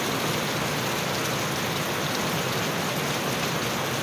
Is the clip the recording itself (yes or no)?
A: yes